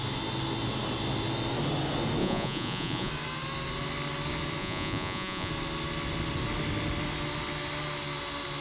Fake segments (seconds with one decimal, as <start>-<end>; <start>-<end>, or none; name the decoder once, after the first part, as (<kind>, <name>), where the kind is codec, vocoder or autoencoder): 2.2-3.1 (vocoder, Vocos); 4.6-5.5